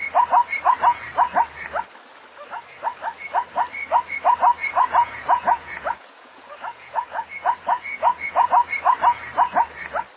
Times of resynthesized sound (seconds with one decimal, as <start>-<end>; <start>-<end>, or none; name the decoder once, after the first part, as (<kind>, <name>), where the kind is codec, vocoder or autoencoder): 4.6-8.5 (vocoder, Vocos)